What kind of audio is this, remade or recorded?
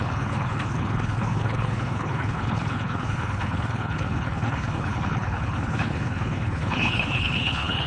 remade